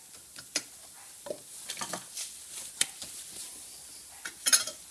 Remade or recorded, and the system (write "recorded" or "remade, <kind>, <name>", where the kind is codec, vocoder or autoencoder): recorded